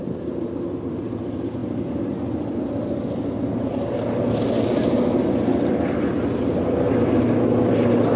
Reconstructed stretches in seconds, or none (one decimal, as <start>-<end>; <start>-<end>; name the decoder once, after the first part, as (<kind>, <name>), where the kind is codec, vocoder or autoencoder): none